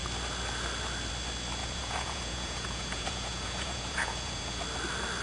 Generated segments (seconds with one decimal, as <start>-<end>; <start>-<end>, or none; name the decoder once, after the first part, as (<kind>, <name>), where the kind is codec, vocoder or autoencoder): 1.6-4.6 (vocoder, Vocos)